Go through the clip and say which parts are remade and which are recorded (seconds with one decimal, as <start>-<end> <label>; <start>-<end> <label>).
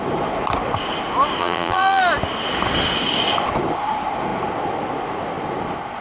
0.0-1.4 recorded; 1.4-2.0 remade; 2.0-6.0 recorded